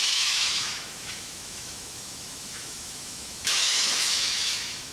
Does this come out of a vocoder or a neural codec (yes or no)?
yes